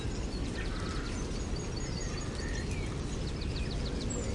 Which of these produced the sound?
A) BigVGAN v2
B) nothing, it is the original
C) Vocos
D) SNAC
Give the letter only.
B